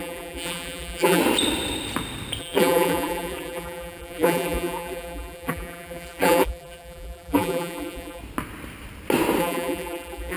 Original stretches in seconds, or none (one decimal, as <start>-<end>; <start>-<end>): 1.2-2.4; 8.2-9.4